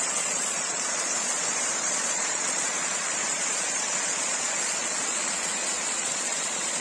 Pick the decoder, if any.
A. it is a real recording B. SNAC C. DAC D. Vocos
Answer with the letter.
D